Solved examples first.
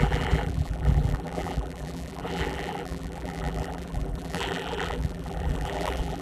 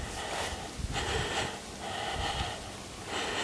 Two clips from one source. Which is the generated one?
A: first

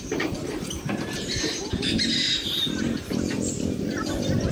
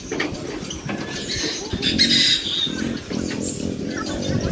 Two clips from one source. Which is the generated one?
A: first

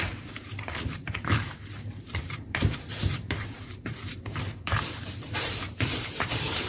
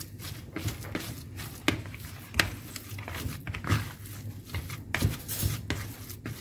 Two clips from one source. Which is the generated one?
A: first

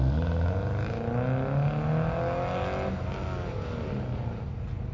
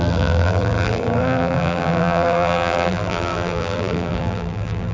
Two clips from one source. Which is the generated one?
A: second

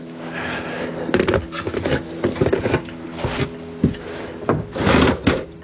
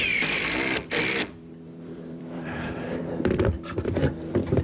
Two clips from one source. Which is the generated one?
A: second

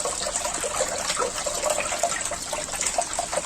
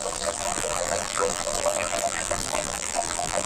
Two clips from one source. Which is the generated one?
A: second